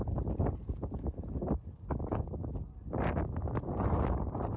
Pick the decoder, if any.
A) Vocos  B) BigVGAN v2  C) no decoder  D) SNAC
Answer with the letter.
C